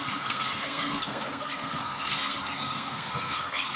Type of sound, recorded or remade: remade